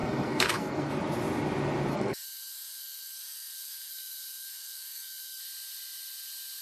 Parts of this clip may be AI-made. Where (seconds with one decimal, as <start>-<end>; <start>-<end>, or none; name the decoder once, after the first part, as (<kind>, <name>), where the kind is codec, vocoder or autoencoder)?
0.0-0.9 (codec, SNAC); 1.9-5.4